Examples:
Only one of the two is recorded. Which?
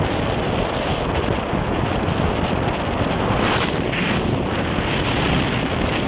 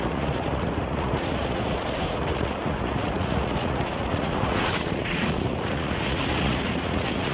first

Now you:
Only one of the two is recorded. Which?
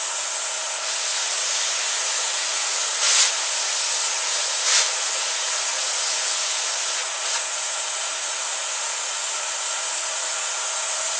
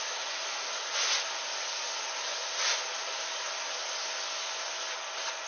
second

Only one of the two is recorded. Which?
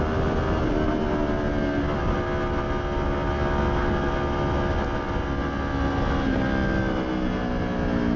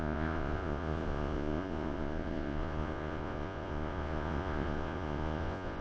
first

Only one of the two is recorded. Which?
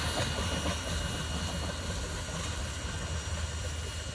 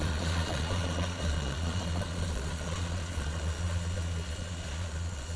first